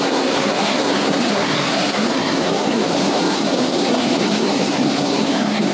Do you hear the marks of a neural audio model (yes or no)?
yes